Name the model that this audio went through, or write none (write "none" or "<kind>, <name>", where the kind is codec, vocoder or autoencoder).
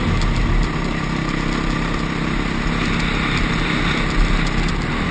none